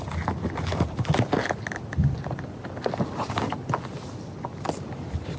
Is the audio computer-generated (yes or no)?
no